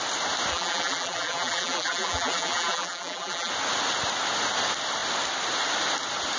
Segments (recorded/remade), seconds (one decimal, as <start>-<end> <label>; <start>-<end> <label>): 0.0-0.5 recorded; 0.5-3.5 remade; 3.5-6.4 recorded